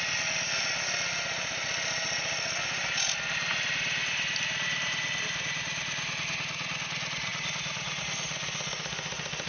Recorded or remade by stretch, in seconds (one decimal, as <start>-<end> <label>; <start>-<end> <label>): 0.0-7.3 recorded; 7.3-8.0 remade; 8.0-9.5 recorded

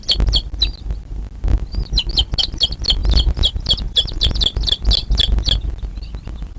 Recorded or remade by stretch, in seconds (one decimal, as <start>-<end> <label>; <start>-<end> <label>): 0.0-3.0 recorded; 3.0-4.3 remade; 4.3-6.6 recorded

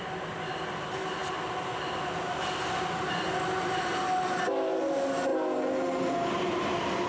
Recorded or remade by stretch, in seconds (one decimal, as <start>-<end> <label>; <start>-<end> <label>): 0.0-7.1 recorded

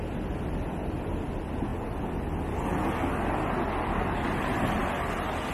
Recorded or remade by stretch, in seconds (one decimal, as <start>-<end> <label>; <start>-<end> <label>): 0.0-5.5 recorded